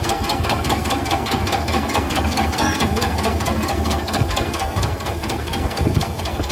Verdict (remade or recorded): remade